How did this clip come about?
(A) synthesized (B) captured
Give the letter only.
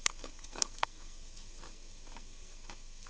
A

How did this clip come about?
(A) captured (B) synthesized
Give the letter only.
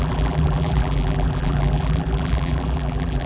B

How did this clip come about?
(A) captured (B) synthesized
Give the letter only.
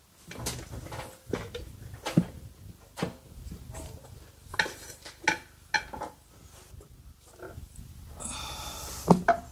A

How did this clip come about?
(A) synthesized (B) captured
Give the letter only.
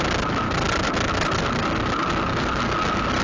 B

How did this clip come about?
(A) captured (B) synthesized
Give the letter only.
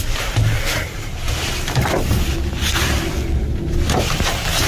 A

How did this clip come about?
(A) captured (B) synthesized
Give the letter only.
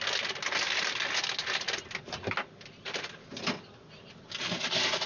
A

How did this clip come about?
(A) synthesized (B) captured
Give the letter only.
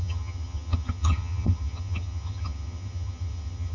A